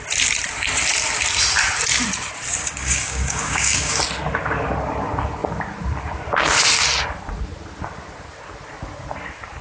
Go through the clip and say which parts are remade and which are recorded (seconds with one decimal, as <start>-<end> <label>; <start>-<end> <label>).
0.0-2.6 recorded; 2.6-4.0 remade; 4.0-9.6 recorded